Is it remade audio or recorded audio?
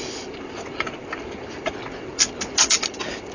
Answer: recorded